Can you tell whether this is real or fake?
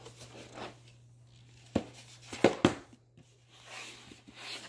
real